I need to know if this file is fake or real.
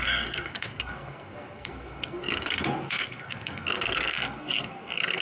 fake